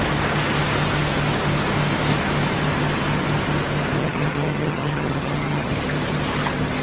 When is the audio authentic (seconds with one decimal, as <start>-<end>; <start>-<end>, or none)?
0.0-4.0; 5.7-6.8